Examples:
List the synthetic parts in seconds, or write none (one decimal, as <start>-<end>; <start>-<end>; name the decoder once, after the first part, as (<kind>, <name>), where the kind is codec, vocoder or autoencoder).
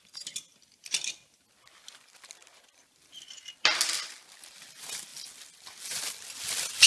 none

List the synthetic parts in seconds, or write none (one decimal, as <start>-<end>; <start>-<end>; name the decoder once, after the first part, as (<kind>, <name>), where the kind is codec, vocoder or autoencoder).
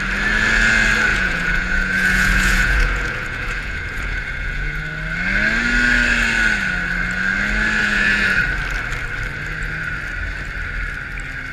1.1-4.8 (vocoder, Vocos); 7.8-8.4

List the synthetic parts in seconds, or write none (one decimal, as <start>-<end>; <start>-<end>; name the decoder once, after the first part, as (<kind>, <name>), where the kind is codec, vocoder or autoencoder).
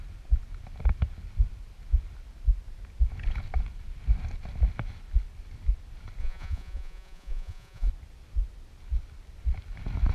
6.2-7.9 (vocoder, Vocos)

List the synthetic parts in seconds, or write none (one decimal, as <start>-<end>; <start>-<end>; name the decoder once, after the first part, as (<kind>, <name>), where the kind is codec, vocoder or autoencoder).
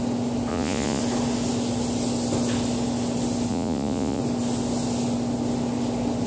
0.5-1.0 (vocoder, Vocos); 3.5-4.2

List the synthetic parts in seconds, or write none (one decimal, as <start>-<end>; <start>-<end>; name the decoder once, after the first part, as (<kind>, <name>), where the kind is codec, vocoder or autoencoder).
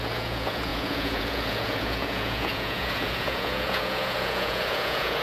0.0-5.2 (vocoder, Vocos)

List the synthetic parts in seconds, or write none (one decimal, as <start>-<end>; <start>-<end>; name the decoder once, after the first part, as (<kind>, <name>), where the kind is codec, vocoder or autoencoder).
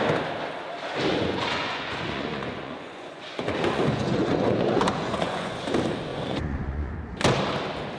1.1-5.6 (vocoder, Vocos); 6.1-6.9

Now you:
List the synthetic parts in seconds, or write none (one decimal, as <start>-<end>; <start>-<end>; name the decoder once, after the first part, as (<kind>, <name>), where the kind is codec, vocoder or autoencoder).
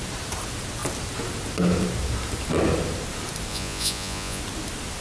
3.5-4.4 (vocoder, Vocos)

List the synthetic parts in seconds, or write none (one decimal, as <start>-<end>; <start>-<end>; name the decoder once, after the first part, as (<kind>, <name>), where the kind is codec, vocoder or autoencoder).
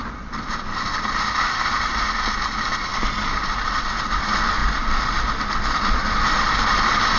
none